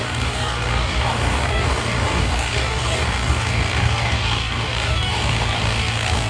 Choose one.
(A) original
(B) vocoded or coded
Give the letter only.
B